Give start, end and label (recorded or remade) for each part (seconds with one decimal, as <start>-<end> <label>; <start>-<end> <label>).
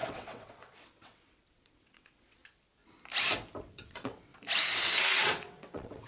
0.0-2.4 remade; 2.4-3.6 recorded; 3.6-4.3 remade; 4.3-5.0 recorded; 5.0-6.1 remade